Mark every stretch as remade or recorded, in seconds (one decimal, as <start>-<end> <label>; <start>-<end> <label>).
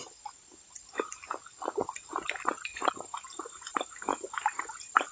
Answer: 0.0-1.6 remade; 1.6-5.1 recorded